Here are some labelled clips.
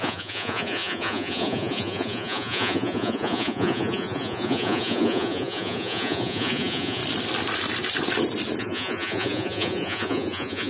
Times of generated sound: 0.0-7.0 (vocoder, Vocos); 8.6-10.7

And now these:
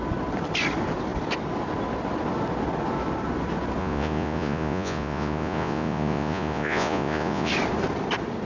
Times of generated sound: 3.8-7.5 (vocoder, Vocos)

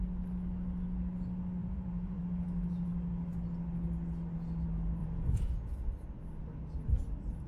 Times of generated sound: 1.6-2.2 (vocoder, Vocos); 5.0-5.9